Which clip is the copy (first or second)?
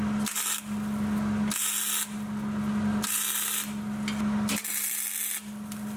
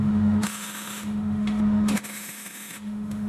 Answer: second